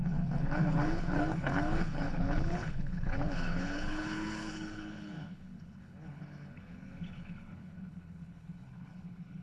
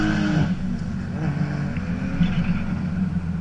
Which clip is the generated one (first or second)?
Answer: first